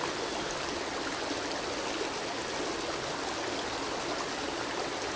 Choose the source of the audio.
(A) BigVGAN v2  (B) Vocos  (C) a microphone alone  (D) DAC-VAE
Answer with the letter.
C